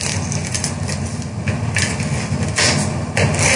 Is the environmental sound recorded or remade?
recorded